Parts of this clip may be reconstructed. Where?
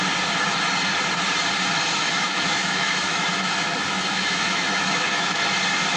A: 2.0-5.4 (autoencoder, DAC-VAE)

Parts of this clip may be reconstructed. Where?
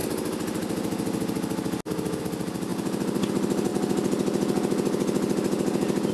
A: none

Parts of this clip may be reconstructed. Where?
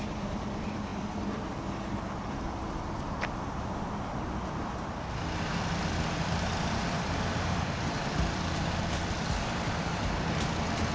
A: 5.5-10.0 (vocoder, BigVGAN v2)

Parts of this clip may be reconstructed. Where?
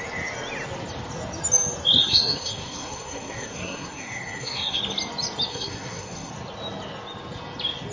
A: 2.0-4.8 (codec, SNAC); 5.5-6.3